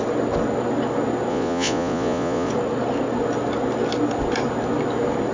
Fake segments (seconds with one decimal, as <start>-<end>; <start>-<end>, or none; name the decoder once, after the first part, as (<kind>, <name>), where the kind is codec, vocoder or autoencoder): 1.3-2.5 (vocoder, Vocos)